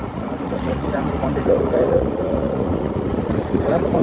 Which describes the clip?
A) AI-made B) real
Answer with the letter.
A